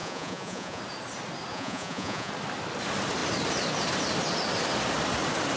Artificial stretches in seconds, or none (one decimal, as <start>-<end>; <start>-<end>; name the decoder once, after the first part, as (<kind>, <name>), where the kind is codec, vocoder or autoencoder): 0.0-0.8 (vocoder, Vocos); 1.5-2.3